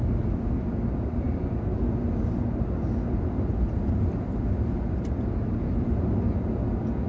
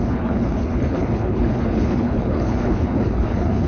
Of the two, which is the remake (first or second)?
second